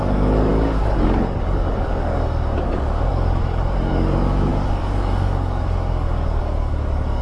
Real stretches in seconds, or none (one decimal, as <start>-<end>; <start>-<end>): none